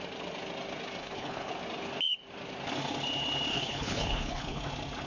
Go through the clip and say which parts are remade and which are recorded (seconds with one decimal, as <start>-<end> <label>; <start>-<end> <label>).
0.0-1.0 recorded; 1.0-1.5 remade; 1.5-3.5 recorded; 3.5-4.6 remade; 4.6-5.1 recorded